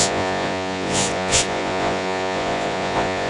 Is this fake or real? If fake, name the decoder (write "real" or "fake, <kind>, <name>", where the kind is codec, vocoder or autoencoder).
fake, vocoder, Vocos